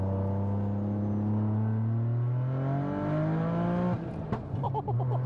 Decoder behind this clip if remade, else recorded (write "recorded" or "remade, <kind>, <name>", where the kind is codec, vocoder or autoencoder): recorded